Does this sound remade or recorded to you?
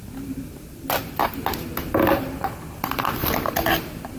recorded